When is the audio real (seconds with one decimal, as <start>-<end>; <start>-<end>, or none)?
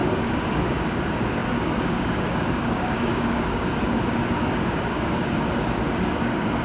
none